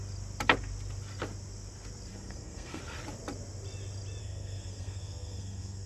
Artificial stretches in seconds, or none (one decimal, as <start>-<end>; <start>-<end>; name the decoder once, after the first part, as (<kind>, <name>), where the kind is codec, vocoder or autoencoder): 2.1-2.8 (codec, SNAC); 4.2-5.9